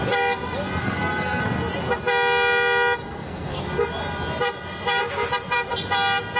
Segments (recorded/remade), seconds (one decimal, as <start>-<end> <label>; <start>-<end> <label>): 0.0-0.8 recorded; 0.8-1.4 remade; 1.4-3.0 recorded; 3.0-3.6 remade; 3.6-6.4 recorded

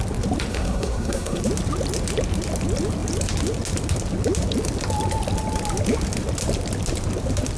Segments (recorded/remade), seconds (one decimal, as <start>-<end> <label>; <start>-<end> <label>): 0.0-0.5 recorded; 0.5-1.4 remade; 1.4-7.6 recorded

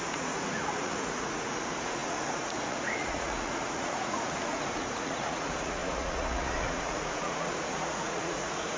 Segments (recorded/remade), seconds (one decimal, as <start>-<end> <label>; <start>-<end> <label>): 0.0-8.8 remade

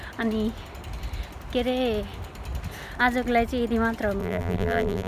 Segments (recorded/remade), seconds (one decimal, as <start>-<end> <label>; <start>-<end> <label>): 0.0-4.2 recorded; 4.2-5.1 remade

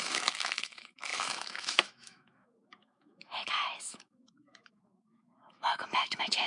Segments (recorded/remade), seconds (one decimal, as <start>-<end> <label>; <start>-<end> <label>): 0.0-6.5 remade

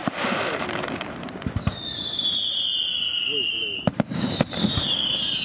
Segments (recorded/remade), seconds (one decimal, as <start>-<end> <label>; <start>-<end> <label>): 0.0-2.7 remade; 2.7-3.8 recorded; 3.8-5.4 remade

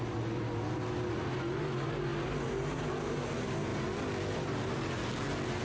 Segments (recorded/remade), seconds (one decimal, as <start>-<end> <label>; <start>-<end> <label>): 0.0-5.6 recorded

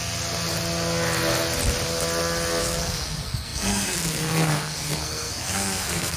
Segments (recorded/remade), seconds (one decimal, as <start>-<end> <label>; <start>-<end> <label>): 0.0-2.6 recorded; 2.6-6.2 remade